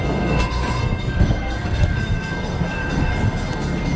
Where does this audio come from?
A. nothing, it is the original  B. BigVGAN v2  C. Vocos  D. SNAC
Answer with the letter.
D